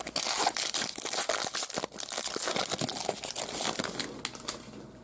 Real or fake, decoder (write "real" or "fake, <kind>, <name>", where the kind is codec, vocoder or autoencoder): real